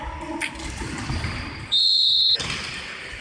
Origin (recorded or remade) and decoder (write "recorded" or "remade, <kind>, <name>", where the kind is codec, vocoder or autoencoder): recorded